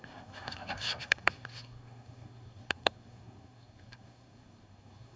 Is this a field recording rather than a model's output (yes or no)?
no